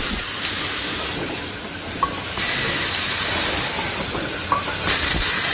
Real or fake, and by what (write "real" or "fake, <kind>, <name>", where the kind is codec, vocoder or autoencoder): real